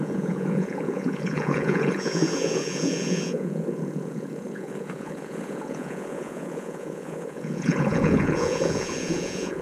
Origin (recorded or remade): remade